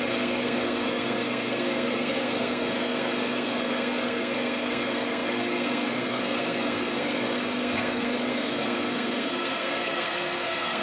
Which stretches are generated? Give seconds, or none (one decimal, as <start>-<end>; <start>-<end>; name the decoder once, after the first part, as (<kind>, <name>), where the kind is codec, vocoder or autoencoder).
0.0-10.8 (codec, SNAC)